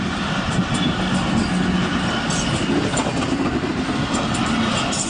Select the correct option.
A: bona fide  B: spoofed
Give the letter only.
A